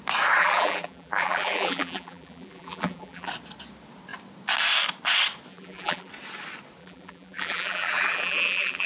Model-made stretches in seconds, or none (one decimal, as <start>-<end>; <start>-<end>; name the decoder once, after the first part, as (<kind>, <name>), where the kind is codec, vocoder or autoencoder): 0.4-3.3 (vocoder, BigVGAN v2); 5.5-6.1; 6.8-8.9